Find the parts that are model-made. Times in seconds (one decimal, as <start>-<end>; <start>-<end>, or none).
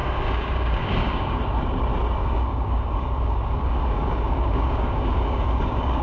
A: 0.0-1.4; 2.2-6.0